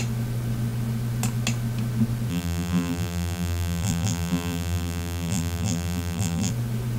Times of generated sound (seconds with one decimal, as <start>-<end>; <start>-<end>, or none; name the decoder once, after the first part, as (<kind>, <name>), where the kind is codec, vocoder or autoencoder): 2.3-6.5 (vocoder, BigVGAN v2)